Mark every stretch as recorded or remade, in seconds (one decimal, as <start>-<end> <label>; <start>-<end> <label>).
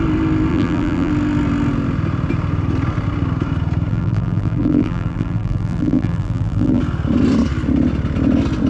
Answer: 0.0-0.5 recorded; 0.5-1.1 remade; 1.1-3.9 recorded; 3.9-6.8 remade; 6.8-8.7 recorded